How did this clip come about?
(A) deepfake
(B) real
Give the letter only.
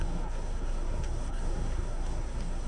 A